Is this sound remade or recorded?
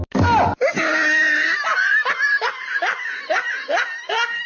recorded